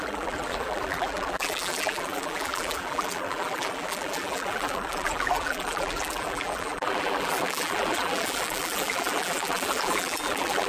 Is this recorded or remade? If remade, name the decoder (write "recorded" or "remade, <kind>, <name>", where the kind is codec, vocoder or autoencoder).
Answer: remade, vocoder, BigVGAN v2